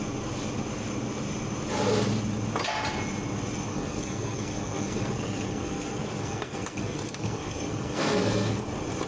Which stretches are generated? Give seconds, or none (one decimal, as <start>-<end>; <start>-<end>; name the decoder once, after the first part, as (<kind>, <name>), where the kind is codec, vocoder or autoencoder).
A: 3.7-8.6 (codec, SNAC)